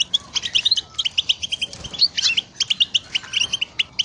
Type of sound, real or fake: fake